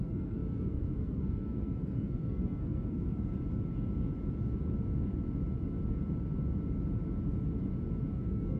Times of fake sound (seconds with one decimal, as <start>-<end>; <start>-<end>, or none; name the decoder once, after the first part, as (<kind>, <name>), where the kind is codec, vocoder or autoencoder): 0.0-3.3 (codec, SNAC); 8.1-8.6